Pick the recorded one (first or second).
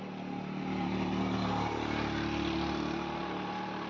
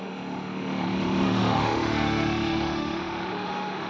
first